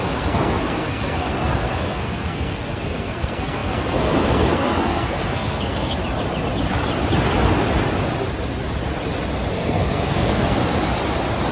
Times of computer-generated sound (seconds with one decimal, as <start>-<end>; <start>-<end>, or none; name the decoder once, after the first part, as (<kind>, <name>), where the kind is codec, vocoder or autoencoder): 0.0-6.0 (codec, SNAC); 9.5-10.6